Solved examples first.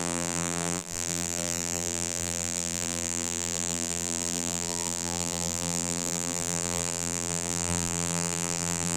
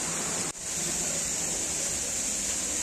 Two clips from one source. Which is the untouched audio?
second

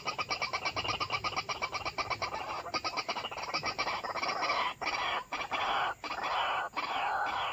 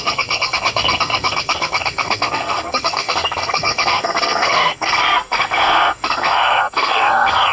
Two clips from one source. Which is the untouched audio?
first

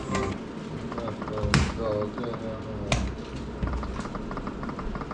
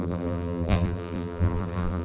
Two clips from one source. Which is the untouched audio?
first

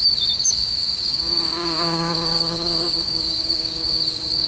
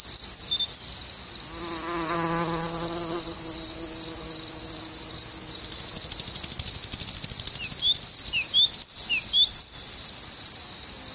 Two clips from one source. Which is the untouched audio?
second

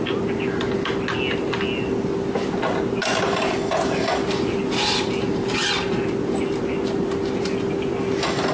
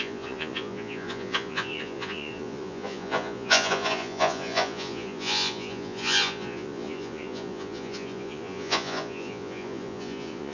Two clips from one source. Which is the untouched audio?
first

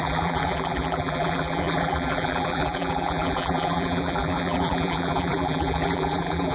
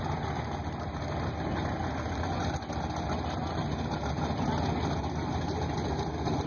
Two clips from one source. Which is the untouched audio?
second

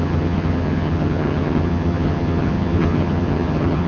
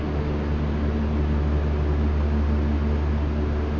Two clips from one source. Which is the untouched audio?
second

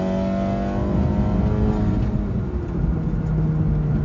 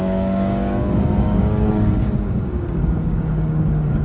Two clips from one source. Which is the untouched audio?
first